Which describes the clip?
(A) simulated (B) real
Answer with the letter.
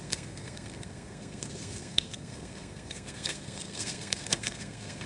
A